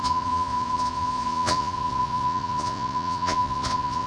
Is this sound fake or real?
fake